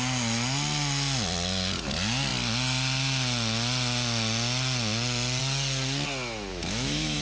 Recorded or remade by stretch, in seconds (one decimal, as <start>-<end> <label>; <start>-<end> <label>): 0.0-6.5 recorded; 6.5-7.2 remade